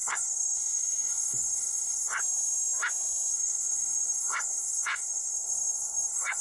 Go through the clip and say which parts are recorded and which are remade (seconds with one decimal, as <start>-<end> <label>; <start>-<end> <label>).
0.0-2.2 remade; 2.2-3.3 recorded; 3.3-6.4 remade